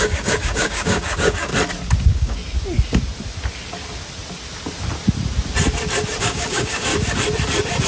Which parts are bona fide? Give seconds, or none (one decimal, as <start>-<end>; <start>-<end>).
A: 1.5-2.0; 2.4-6.2; 6.9-7.9